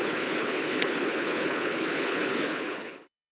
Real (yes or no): no